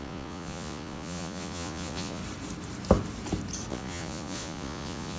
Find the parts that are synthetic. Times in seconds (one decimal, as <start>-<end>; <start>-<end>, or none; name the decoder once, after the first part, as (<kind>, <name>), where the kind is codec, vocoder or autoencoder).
0.0-2.2 (vocoder, Vocos); 3.7-5.2